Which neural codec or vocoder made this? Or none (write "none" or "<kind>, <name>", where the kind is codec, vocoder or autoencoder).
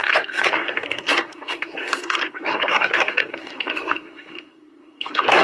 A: codec, SNAC